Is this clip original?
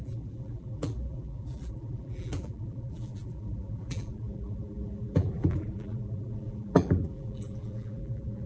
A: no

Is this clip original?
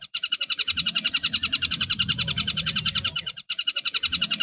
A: no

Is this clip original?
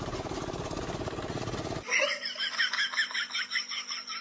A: yes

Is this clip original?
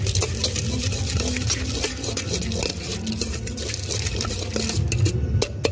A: yes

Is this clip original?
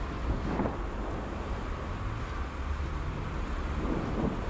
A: yes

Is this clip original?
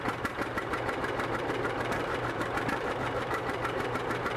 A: no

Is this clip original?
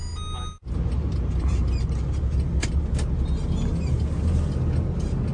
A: yes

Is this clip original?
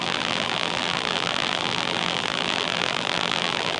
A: no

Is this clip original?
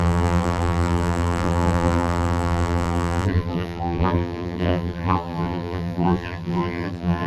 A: no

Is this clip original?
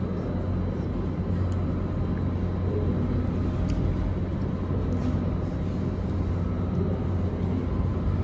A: yes